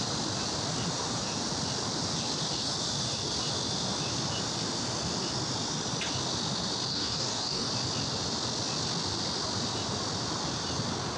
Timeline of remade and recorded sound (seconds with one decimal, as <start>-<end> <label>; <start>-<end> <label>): 0.0-6.9 recorded; 6.9-7.7 remade; 7.7-11.2 recorded